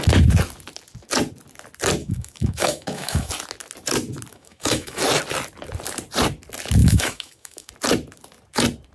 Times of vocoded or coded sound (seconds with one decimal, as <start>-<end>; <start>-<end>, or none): 2.0-3.3; 4.3-5.0; 6.8-7.7